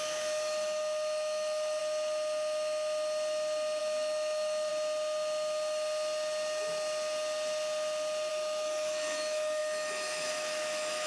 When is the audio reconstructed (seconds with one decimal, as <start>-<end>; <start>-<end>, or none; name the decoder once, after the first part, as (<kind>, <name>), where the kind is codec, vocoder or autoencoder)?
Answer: 0.0-1.8 (autoencoder, DAC-VAE); 3.8-4.7; 8.3-11.1